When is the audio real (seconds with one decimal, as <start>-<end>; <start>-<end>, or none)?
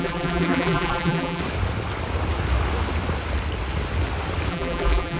1.4-4.5